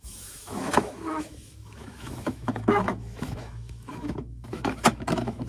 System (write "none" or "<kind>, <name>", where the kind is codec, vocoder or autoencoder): autoencoder, DAC-VAE